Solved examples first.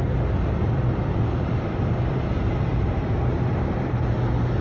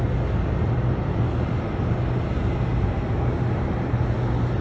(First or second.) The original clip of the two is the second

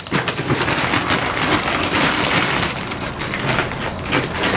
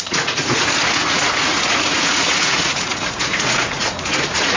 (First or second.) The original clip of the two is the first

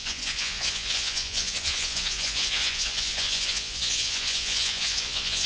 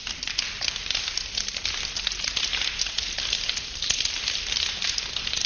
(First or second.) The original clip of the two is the second